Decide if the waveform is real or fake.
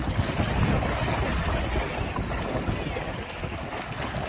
real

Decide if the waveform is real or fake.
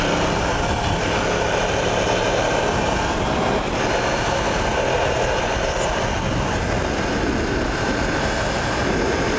real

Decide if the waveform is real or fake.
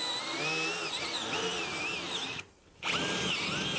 real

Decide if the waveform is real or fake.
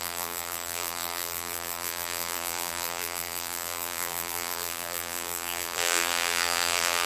fake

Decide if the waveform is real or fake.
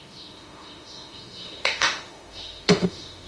fake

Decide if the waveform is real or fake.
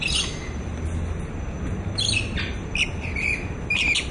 real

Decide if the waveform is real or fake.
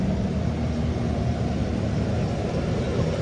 fake